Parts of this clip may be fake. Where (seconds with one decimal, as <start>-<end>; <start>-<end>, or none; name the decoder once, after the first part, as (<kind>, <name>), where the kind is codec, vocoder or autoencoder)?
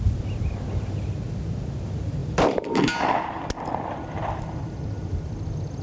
2.2-2.7 (vocoder, BigVGAN v2)